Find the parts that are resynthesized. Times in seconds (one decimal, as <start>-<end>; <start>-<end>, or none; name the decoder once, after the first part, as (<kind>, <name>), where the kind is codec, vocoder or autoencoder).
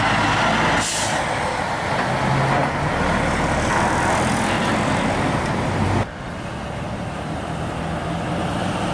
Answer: none